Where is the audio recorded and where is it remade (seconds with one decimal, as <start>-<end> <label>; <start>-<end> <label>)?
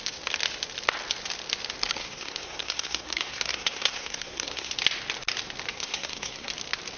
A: 0.0-2.0 recorded; 2.0-4.7 remade; 4.7-5.7 recorded; 5.7-6.5 remade; 6.5-7.0 recorded